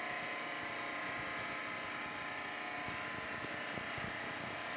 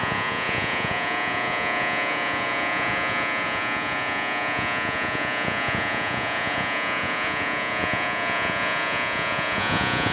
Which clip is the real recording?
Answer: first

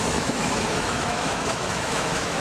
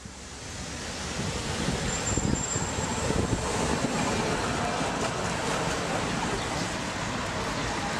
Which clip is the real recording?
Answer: second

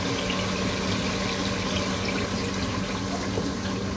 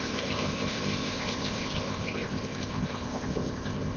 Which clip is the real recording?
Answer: first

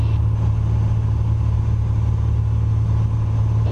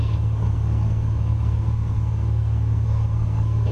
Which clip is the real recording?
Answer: first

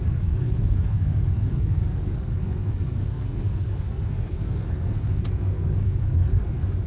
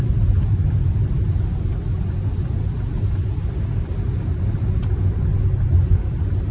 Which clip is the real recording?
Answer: second